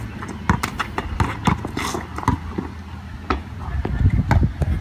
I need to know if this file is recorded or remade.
recorded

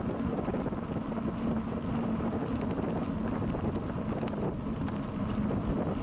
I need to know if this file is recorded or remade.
recorded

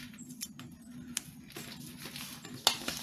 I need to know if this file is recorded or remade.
recorded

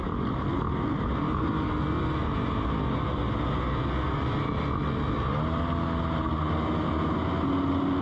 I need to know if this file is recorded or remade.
recorded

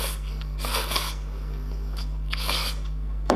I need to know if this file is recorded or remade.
remade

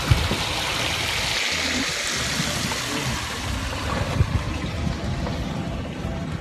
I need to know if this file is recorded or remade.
recorded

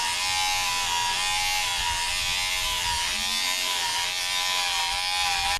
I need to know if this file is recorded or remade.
recorded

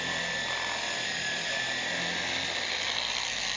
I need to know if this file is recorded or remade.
recorded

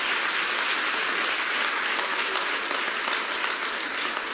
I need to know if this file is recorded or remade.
recorded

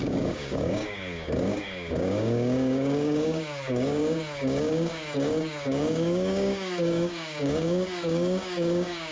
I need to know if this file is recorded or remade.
remade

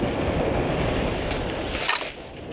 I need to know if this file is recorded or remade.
recorded